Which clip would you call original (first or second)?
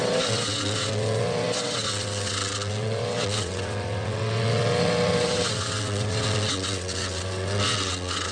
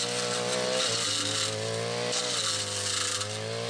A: second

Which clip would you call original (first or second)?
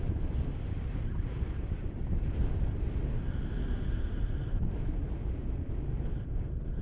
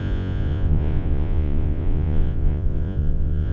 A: first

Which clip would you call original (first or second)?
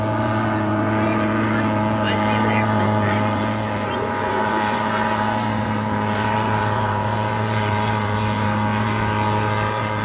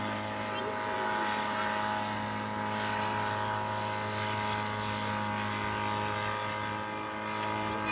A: second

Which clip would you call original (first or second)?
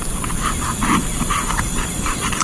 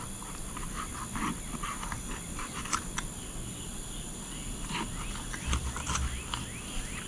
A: second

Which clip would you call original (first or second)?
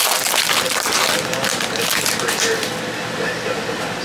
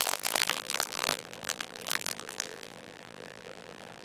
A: first